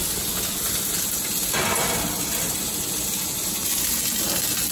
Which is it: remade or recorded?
recorded